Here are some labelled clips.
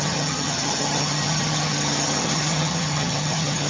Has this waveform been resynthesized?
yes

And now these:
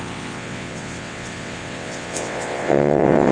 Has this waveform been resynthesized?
yes